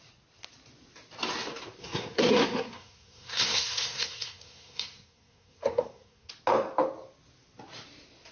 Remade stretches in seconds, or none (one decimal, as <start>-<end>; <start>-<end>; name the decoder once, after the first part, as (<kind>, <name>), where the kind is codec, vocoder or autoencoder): 1.8-6.3 (codec, SNAC)